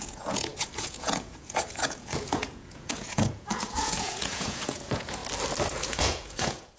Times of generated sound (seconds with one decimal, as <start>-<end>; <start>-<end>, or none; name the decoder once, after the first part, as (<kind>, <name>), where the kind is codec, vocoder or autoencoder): 0.0-5.2 (vocoder, Vocos); 5.7-6.8